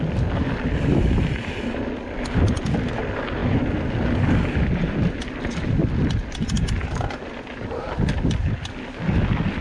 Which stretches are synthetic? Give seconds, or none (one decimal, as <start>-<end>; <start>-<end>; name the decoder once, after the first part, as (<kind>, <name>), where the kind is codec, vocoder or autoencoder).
none